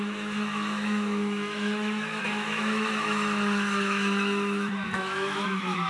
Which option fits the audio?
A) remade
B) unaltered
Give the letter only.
A